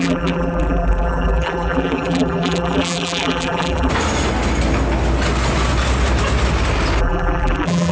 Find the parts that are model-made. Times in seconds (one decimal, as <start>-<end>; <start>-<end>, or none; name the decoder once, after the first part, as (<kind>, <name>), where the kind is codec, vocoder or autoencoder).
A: 0.0-3.9 (vocoder, BigVGAN v2); 7.0-7.9